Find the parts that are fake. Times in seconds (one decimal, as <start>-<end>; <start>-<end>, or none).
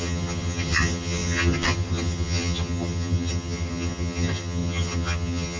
0.0-5.6